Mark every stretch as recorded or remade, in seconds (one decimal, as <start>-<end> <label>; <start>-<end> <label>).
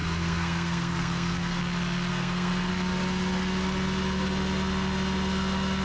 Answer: 0.0-1.6 remade; 1.6-2.1 recorded; 2.1-2.7 remade; 2.7-5.8 recorded